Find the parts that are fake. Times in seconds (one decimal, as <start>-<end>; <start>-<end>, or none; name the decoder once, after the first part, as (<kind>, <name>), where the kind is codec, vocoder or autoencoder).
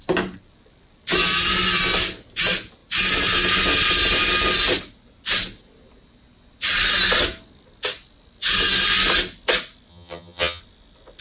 9.9-10.6 (vocoder, HiFi-GAN)